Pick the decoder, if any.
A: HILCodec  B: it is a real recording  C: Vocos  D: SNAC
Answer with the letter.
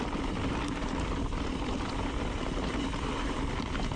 B